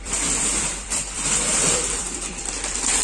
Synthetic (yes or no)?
yes